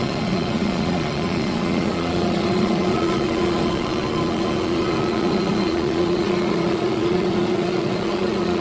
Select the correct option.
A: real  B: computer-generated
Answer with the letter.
B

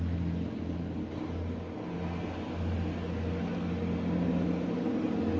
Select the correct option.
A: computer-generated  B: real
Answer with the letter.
B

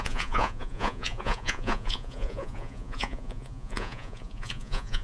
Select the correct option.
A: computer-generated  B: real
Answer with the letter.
A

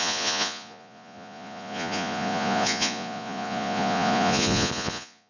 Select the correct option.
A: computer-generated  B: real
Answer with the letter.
A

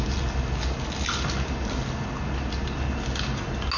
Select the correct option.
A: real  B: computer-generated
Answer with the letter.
A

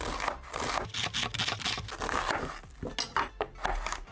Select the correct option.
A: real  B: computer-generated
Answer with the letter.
A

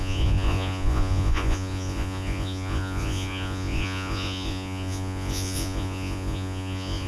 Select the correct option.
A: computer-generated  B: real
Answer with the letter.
A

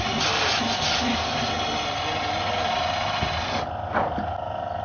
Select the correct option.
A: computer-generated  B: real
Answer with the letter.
B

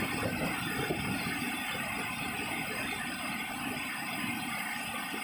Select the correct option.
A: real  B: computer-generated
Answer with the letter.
A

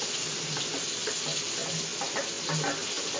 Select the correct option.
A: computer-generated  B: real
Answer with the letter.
B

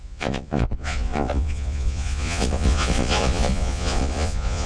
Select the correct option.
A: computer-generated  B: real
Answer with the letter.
A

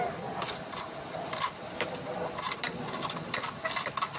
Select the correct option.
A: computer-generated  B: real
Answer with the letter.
B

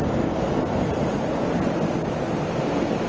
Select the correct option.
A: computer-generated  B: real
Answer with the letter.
B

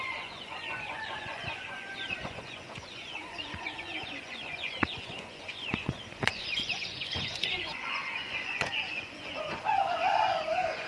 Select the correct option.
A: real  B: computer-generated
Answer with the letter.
B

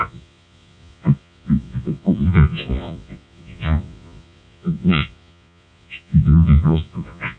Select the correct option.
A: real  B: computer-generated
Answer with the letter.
B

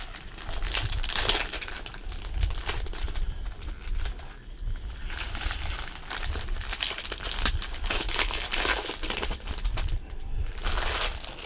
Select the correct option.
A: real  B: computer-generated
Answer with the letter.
A